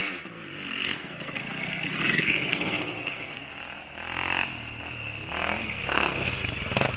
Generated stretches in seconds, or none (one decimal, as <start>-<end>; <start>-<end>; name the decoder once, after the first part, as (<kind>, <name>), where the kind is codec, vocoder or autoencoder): 0.0-3.5 (codec, SNAC); 5.6-6.3